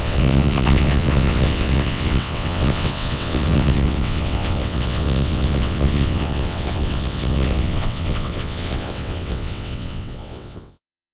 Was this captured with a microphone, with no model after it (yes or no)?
no